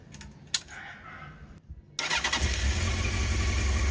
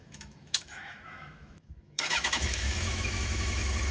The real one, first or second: first